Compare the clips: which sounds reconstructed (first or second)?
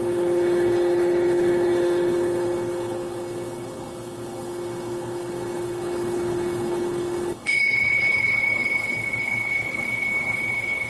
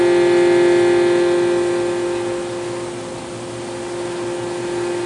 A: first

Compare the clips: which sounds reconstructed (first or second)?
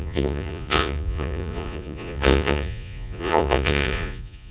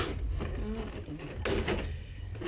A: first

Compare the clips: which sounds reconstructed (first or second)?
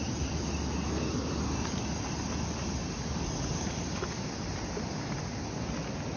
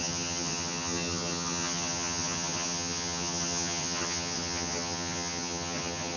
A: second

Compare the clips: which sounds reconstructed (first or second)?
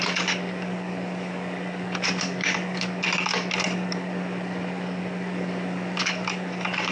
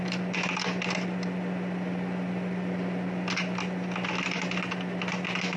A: first